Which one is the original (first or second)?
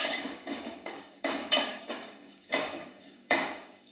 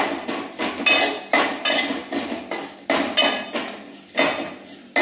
second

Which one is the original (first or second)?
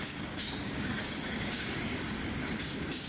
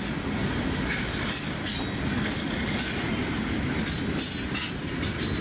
second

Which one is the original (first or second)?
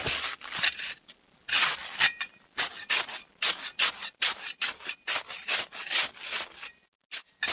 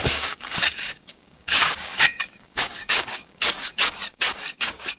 first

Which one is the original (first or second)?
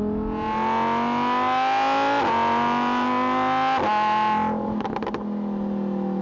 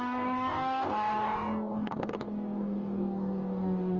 first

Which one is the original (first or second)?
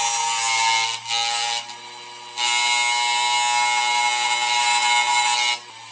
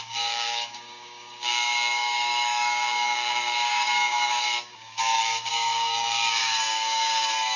first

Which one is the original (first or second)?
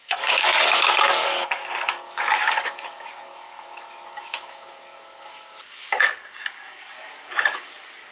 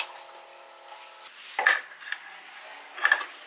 second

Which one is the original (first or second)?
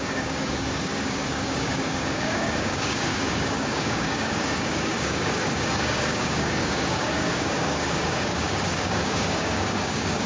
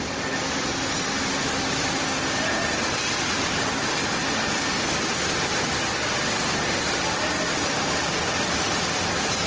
second